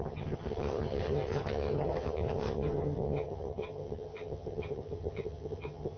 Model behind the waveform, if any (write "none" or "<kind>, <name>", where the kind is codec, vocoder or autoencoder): vocoder, HiFi-GAN